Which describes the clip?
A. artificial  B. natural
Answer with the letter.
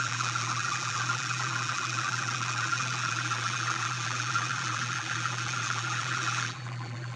A